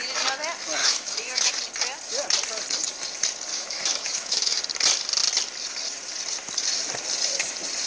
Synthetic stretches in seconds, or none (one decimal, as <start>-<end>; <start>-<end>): 0.8-1.5; 3.5-4.6